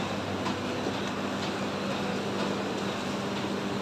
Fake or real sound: real